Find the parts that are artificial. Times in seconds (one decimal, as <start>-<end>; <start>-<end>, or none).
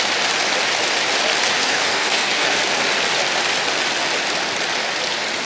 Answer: 1.6-2.6